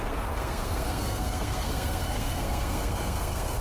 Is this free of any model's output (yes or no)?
no